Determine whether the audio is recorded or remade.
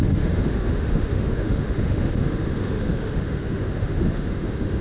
remade